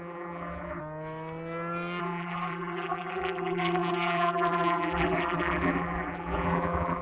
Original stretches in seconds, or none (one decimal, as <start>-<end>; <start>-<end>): 0.8-2.0